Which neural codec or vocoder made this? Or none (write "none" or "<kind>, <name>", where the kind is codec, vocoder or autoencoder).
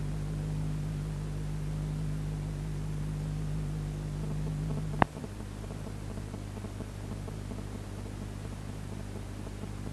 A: none